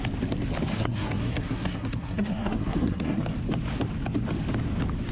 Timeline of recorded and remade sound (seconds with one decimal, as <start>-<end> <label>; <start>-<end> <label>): 0.0-0.7 recorded; 0.7-3.2 remade; 3.2-5.1 recorded

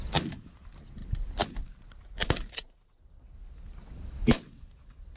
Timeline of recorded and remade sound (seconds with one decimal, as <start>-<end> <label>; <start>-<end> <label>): 0.0-5.2 recorded

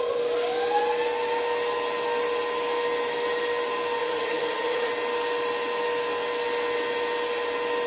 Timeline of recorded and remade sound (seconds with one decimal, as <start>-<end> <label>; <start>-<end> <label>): 0.0-4.0 recorded; 4.0-4.9 remade; 4.9-7.9 recorded

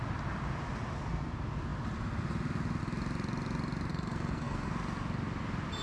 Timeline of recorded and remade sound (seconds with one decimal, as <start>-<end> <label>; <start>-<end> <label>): 0.0-3.9 recorded; 3.9-4.7 remade; 4.7-5.8 recorded

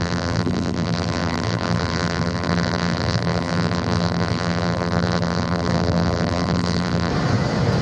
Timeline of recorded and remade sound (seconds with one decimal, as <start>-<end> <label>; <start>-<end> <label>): 0.0-7.1 remade; 7.1-7.8 recorded

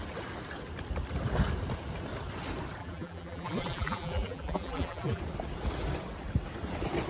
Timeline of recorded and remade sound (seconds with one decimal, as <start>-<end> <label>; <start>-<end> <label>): 0.0-2.8 recorded; 2.8-5.2 remade; 5.2-7.1 recorded